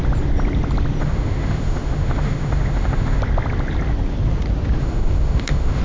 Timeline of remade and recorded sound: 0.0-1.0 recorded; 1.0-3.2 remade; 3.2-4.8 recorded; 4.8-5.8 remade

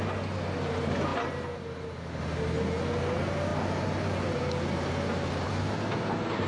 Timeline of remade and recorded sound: 0.0-6.5 recorded